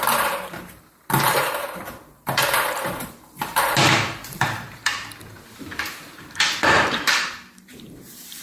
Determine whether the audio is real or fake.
fake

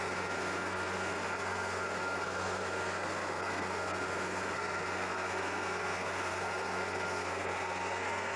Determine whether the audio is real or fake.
fake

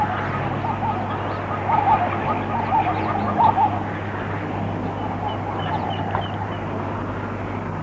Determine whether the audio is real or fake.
real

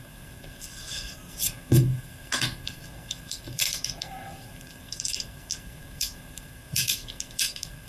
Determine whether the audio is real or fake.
fake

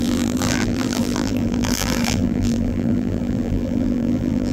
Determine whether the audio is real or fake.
fake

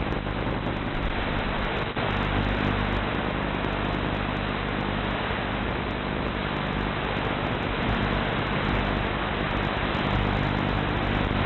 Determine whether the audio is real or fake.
real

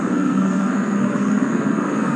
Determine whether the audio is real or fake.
fake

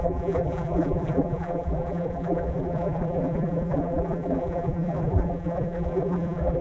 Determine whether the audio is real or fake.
fake